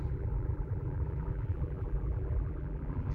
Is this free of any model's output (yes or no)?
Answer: no